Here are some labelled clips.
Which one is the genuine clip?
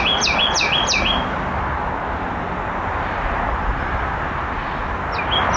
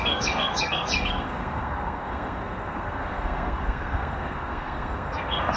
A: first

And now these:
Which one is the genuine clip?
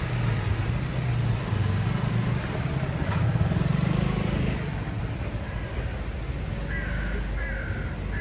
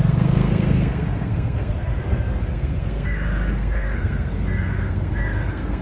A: first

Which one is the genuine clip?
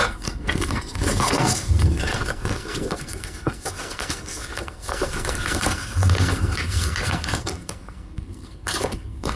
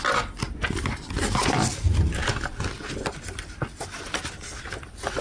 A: second